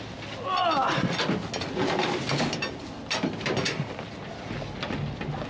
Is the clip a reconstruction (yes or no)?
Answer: no